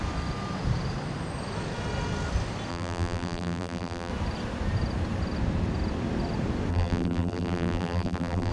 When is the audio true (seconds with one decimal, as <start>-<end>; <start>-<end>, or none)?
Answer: 0.0-2.7; 4.1-6.7